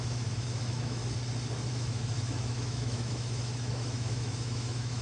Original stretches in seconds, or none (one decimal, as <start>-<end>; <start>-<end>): 1.0-1.7